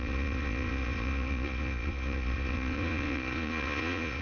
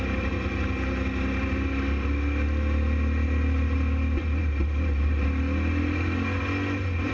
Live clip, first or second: second